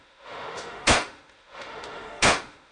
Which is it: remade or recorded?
remade